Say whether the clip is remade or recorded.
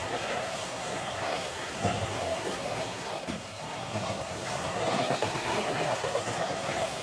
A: remade